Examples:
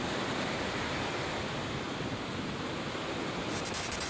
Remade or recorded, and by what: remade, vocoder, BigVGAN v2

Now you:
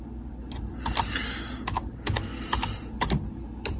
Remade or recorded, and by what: recorded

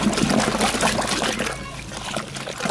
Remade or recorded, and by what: recorded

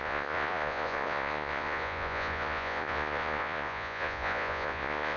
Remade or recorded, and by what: remade, vocoder, Vocos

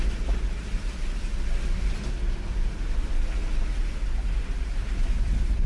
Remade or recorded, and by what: recorded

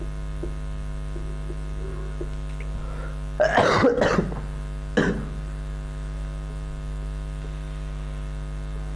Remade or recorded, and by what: recorded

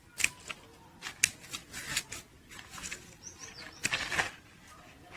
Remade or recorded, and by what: recorded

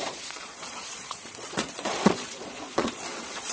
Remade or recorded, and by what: remade, vocoder, Vocos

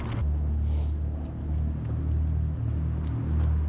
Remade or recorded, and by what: recorded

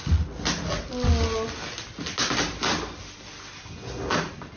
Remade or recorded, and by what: recorded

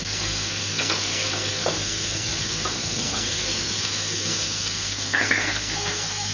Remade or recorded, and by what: remade, codec, SNAC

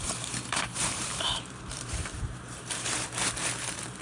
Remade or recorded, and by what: remade, vocoder, BigVGAN v2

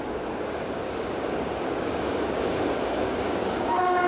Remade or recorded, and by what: remade, codec, DAC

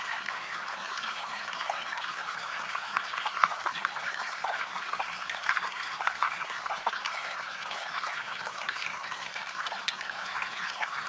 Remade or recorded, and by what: remade, codec, SNAC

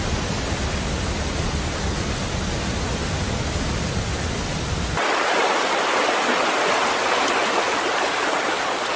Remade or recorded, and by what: recorded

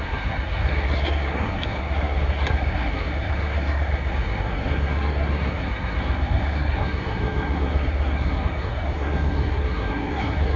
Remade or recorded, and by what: remade, codec, SNAC